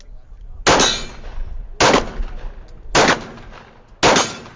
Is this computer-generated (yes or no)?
no